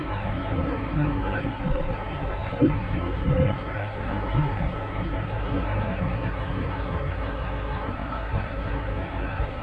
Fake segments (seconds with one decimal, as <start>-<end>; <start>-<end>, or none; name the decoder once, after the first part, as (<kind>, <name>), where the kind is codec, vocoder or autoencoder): 0.0-9.6 (codec, SNAC)